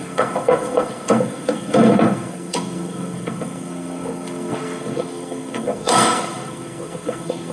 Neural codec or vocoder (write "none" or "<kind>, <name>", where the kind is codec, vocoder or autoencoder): codec, SNAC